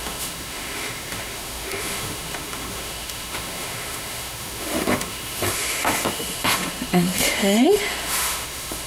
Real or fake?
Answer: fake